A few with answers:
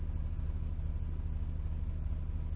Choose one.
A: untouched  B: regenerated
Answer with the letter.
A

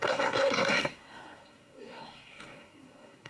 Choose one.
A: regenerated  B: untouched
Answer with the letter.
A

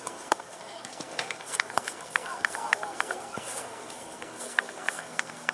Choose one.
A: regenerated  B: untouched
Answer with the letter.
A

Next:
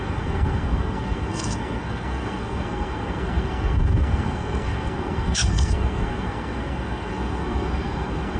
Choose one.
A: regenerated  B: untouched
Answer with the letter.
A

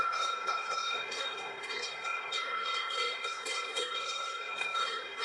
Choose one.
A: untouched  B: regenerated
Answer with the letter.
B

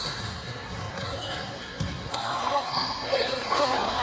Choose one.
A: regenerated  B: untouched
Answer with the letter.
A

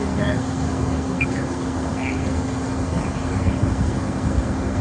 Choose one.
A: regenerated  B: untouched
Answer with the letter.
A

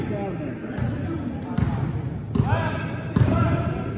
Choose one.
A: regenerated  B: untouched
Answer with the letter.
B